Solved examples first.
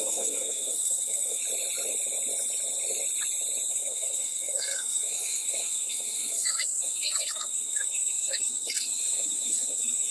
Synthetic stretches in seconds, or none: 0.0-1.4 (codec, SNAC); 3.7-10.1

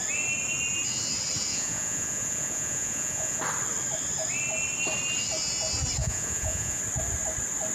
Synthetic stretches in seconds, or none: 1.5-3.4 (vocoder, Vocos); 6.0-6.8